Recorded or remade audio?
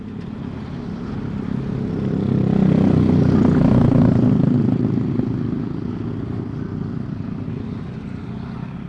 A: recorded